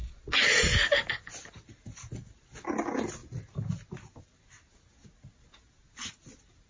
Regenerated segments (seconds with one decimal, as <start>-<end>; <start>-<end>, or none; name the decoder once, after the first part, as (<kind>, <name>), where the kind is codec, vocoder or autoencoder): none